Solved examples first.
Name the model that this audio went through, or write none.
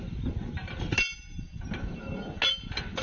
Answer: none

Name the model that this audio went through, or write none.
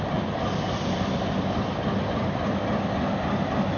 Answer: none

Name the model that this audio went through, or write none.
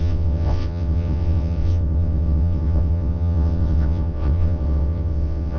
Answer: vocoder, WaveNeXt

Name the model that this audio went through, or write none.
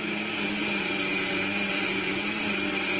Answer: none